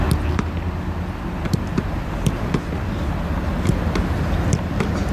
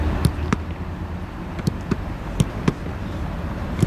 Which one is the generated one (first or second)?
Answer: second